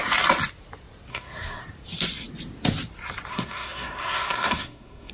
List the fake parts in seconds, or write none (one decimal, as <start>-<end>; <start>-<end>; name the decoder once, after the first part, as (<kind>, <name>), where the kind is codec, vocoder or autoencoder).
1.1-1.6 (codec, SNAC); 3.3-5.1